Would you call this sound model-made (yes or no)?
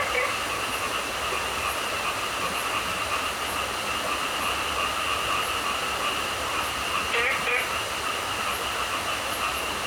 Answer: no